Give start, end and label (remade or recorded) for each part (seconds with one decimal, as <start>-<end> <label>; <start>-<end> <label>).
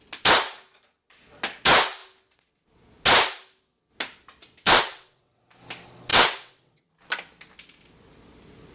0.0-4.6 recorded; 4.6-5.4 remade; 5.4-6.1 recorded; 6.1-6.9 remade; 6.9-8.7 recorded